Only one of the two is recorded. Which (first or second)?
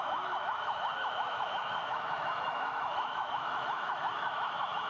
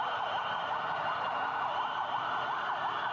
second